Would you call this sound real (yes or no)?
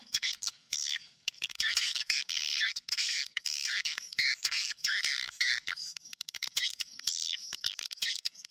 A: no